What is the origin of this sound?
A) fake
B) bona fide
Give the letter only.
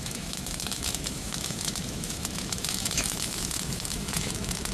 A